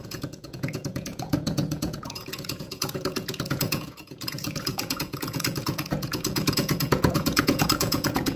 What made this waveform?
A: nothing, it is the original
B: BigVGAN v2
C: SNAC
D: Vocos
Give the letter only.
D